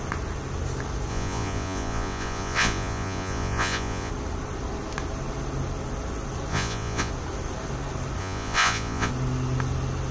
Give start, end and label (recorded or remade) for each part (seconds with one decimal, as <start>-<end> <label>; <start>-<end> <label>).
0.0-1.1 recorded; 1.1-4.1 remade; 4.1-6.5 recorded; 6.5-7.1 remade; 7.1-8.2 recorded; 8.2-9.1 remade; 9.1-10.1 recorded